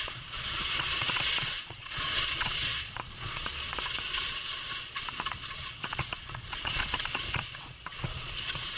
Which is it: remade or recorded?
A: remade